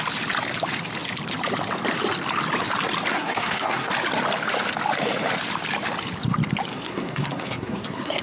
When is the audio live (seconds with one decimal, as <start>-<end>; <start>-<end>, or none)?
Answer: 0.0-3.1; 3.9-6.7